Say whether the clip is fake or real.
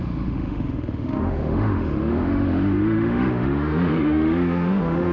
fake